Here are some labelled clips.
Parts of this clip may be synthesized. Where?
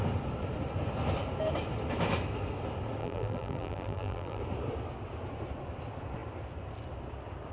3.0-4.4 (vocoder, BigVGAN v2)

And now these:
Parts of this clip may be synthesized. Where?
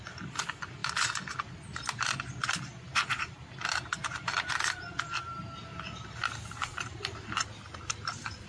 none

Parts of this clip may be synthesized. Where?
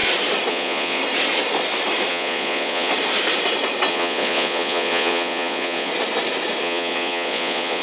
0.5-1.0 (vocoder, Vocos); 2.1-2.9; 3.9-5.9; 6.6-7.8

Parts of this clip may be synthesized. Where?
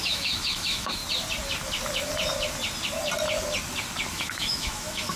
0.0-1.0 (autoencoder, DAC-VAE); 4.1-5.2